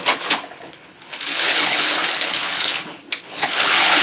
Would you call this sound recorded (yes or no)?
no